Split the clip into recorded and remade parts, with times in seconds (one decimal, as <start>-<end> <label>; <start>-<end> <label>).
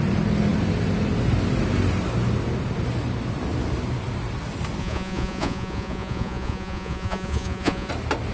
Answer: 0.0-4.8 recorded; 4.8-7.9 remade; 7.9-8.3 recorded